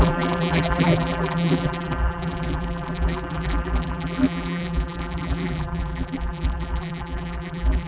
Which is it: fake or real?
fake